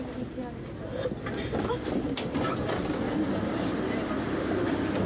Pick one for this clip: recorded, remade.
recorded